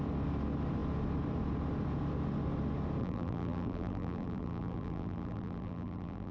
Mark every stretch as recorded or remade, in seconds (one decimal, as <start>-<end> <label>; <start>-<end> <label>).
0.0-3.0 recorded; 3.0-6.3 remade